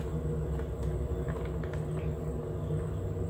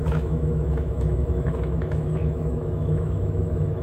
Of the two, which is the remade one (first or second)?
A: second